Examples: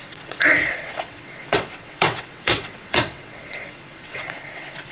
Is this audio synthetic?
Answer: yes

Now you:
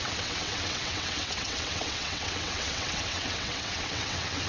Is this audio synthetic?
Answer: yes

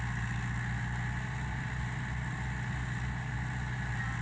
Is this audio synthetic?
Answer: no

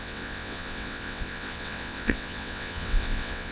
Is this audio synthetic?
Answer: yes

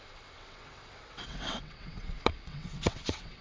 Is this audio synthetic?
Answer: yes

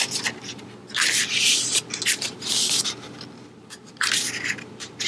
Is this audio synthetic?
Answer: no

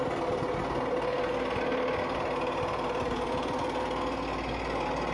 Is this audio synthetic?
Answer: no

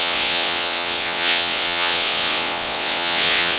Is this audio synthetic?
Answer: yes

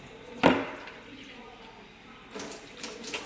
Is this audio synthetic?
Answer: no